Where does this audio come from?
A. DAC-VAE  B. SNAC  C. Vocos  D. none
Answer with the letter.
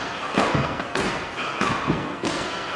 B